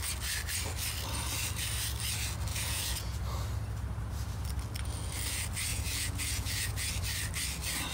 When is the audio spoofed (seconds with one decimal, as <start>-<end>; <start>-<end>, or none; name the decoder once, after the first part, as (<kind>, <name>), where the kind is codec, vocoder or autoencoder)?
2.5-3.2 (vocoder, Vocos); 5.7-6.9